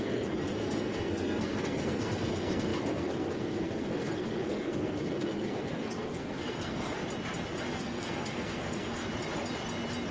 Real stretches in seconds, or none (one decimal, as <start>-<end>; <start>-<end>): 7.0-7.7; 9.0-10.1